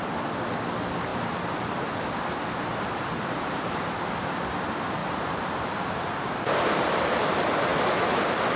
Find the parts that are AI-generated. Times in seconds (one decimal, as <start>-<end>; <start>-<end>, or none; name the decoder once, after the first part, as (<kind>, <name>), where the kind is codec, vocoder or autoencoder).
1.1-4.0 (vocoder, BigVGAN v2); 5.0-7.0